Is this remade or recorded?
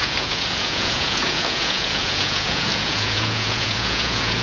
remade